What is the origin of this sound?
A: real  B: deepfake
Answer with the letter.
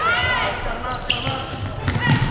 A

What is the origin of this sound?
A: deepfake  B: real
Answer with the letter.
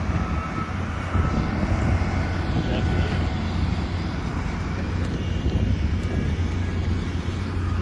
B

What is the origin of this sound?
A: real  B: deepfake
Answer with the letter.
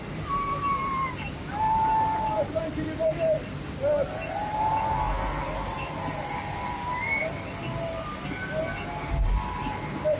A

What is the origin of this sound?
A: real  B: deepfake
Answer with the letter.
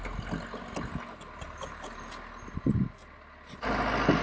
A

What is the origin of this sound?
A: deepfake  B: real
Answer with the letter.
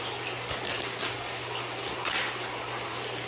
B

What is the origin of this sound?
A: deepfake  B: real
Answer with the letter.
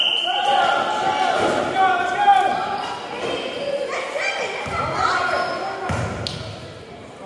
B